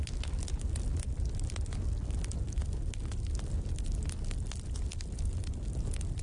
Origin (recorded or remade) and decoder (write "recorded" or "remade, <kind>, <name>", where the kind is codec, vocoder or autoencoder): recorded